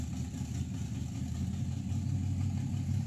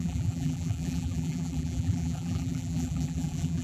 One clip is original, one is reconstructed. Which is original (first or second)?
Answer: first